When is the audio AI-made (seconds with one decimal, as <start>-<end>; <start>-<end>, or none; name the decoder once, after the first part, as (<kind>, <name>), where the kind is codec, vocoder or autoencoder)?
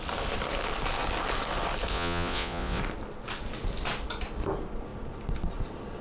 1.9-2.8 (vocoder, Vocos)